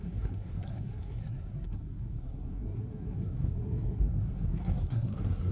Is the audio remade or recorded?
remade